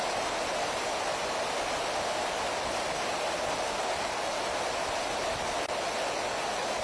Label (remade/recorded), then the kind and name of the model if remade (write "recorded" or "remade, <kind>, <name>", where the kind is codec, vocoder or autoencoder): recorded